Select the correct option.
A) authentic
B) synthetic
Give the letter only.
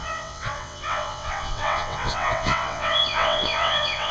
B